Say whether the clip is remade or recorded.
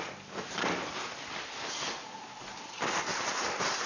recorded